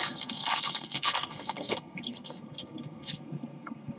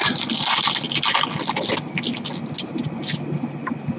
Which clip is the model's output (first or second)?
first